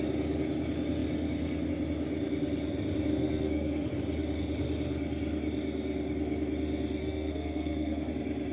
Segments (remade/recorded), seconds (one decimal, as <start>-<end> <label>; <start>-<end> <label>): 0.0-3.1 recorded; 3.1-3.9 remade; 3.9-7.0 recorded; 7.0-8.1 remade; 8.1-8.5 recorded